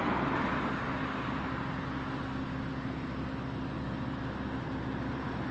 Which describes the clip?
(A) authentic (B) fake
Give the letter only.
A